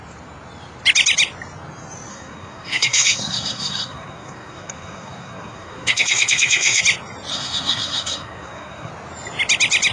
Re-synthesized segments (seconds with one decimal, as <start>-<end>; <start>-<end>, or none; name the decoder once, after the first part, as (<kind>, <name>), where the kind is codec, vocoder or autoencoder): 2.1-6.8 (codec, SNAC); 7.3-8.9